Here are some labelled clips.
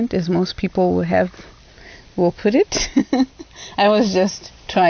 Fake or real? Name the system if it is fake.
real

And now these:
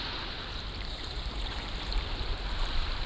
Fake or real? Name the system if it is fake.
fake, vocoder, BigVGAN v2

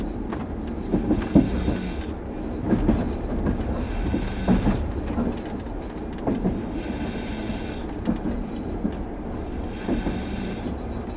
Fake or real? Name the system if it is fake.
real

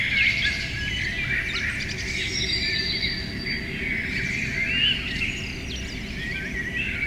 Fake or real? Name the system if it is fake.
real